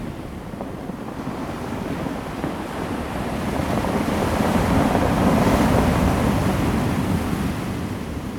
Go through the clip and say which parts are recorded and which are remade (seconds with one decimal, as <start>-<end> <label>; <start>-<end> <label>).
0.0-3.6 recorded; 3.6-4.5 remade; 4.5-6.4 recorded; 6.4-7.0 remade; 7.0-8.4 recorded